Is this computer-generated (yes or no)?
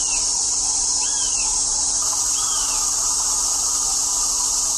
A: no